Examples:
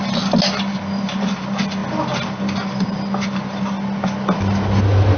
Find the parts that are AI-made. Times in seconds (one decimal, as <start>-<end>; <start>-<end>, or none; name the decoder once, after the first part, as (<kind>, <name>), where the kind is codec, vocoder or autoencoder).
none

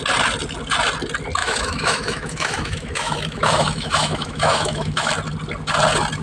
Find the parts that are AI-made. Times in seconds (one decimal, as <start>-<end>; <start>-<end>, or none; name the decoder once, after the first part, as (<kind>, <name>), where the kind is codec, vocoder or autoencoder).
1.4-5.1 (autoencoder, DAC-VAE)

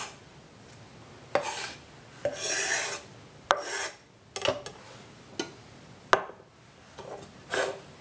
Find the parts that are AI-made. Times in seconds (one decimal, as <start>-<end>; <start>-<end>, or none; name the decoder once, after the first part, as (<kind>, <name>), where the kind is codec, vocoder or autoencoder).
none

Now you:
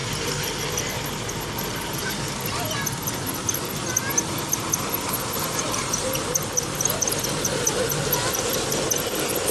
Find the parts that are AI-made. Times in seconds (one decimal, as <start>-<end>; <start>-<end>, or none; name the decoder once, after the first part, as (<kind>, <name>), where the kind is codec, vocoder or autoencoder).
none

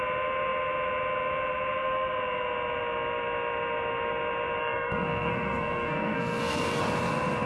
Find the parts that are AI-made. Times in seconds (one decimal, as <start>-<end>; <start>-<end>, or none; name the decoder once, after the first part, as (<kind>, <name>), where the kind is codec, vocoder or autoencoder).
4.6-6.8 (codec, SNAC)

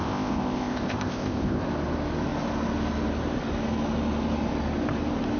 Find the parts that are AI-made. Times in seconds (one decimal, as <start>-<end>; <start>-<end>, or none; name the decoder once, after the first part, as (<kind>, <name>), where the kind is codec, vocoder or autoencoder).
0.0-1.6 (codec, ZipCodec)

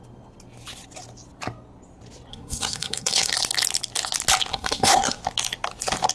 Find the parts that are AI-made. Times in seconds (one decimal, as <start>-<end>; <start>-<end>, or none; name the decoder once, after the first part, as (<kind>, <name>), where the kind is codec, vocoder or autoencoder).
2.3-3.3 (codec, SNAC); 4.5-5.2